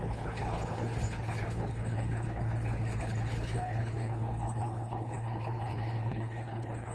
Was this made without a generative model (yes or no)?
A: no